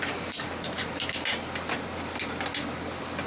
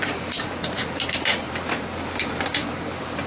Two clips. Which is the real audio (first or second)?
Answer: first